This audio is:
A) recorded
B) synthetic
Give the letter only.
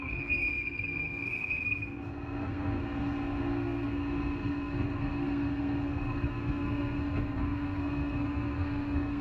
B